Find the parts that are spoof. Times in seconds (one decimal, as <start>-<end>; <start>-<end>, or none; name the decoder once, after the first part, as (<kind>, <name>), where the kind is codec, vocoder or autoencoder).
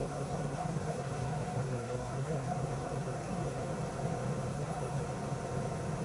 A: 0.0-3.6 (codec, SNAC); 4.5-5.0